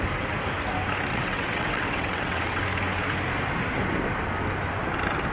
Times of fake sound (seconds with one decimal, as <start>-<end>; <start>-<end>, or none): 1.1-2.6